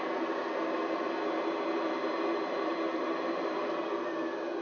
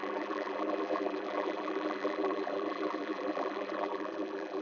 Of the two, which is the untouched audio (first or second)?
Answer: first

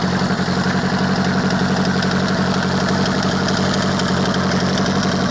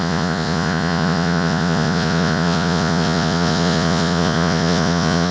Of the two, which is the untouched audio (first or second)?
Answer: first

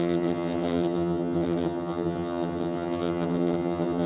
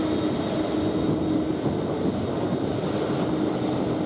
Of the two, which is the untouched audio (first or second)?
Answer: second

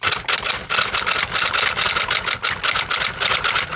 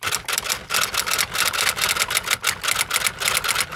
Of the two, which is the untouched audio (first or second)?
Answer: second